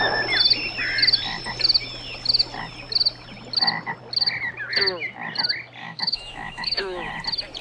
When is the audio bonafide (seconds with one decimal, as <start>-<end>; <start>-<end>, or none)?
0.0-5.8; 7.1-7.6